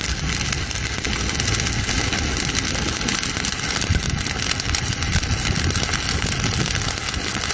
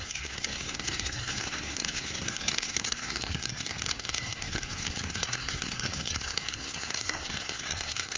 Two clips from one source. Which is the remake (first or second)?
second